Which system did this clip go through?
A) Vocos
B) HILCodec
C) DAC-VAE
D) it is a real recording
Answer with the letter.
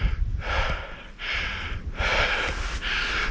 D